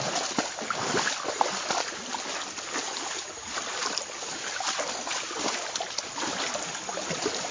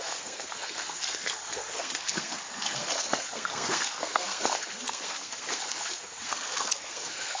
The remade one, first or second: second